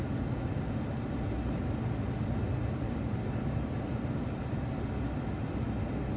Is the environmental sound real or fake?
real